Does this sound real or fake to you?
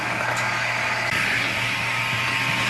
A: fake